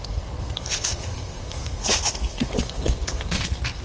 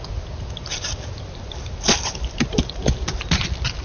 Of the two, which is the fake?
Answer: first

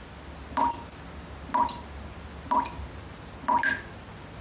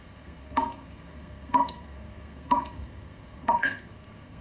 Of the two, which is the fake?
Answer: second